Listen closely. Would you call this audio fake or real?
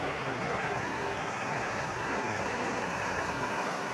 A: fake